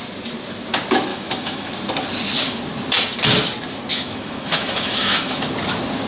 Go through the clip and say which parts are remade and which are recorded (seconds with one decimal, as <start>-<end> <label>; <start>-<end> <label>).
0.0-1.1 recorded; 1.1-1.7 remade; 1.7-3.9 recorded; 3.9-5.4 remade; 5.4-6.1 recorded